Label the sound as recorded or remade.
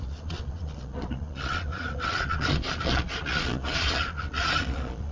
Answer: remade